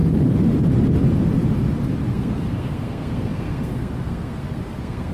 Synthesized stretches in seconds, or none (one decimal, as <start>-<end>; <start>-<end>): 2.1-5.1